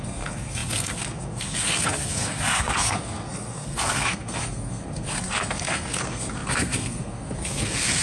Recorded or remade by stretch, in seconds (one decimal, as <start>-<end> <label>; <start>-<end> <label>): 0.0-8.0 remade